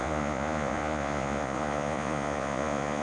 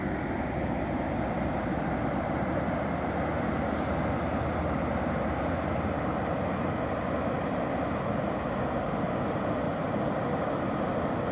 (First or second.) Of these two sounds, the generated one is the first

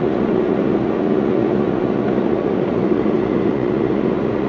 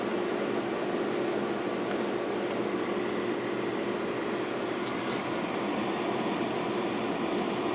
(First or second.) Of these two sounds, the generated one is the first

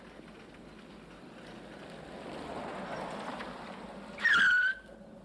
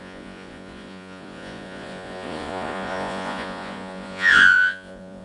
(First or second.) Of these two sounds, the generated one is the second